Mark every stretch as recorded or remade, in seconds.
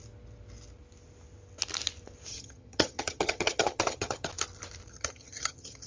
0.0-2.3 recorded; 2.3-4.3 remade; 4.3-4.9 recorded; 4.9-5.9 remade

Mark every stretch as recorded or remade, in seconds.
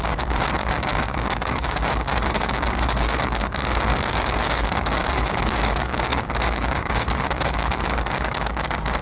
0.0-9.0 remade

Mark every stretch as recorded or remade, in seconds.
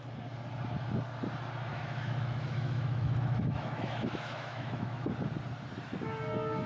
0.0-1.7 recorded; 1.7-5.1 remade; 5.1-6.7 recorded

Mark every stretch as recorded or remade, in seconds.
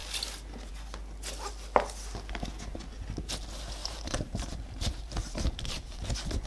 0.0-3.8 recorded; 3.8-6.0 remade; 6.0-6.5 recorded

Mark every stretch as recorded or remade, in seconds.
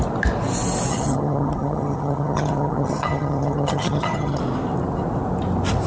0.0-0.9 recorded; 0.9-4.4 remade; 4.4-5.9 recorded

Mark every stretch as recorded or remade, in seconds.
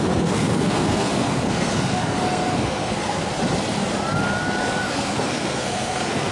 0.0-3.3 remade; 3.3-4.8 recorded; 4.8-6.3 remade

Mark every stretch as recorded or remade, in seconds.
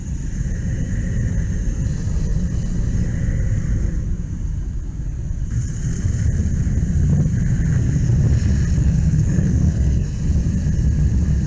0.0-8.8 recorded; 8.8-10.2 remade; 10.2-11.5 recorded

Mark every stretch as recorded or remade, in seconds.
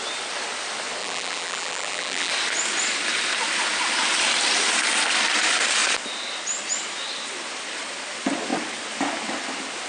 0.0-1.0 recorded; 1.0-2.3 remade; 2.3-9.9 recorded